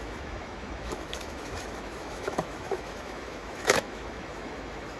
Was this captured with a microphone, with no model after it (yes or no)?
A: no